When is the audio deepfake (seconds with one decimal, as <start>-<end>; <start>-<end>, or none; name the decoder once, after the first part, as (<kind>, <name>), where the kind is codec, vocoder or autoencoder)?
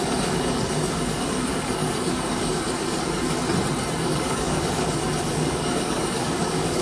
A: 0.0-3.4 (codec, DAC); 4.0-6.8